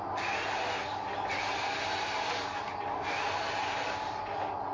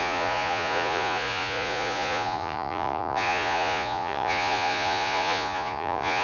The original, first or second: first